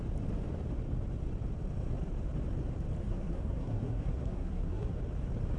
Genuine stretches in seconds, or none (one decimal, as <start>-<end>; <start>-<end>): 0.0-3.0; 5.0-5.6